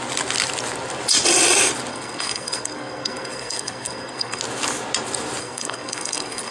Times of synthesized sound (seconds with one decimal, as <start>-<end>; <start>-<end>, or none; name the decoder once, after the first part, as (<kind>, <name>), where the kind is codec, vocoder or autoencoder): 1.9-4.4 (codec, SNAC); 5.4-6.5